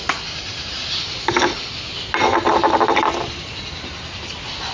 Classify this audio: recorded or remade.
recorded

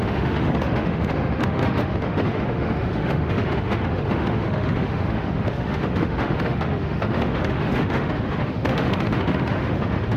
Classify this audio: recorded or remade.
remade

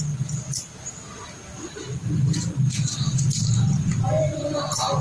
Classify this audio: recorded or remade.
recorded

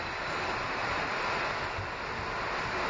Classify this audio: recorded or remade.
recorded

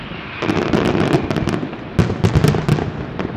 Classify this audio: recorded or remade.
recorded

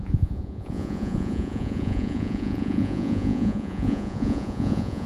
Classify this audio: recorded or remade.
remade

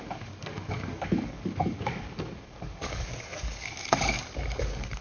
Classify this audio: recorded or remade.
remade